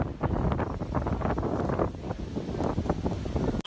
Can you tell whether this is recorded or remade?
recorded